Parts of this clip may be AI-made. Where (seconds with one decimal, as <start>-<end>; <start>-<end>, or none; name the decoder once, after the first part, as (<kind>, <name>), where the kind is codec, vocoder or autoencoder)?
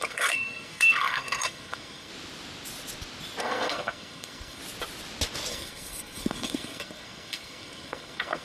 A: 0.0-2.1 (codec, SNAC); 3.4-4.6; 5.5-8.4